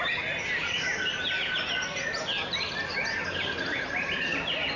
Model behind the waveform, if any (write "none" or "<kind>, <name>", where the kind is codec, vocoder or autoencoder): none